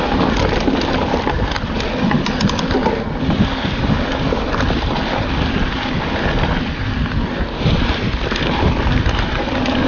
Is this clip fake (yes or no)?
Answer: no